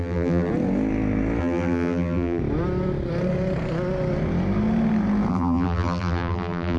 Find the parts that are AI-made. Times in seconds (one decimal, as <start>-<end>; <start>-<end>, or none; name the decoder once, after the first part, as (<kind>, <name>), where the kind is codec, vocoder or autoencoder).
0.0-0.5 (vocoder, BigVGAN v2); 1.4-2.4; 5.3-6.8